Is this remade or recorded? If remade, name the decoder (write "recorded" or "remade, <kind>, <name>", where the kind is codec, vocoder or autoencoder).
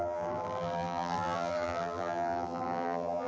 remade, vocoder, BigVGAN v2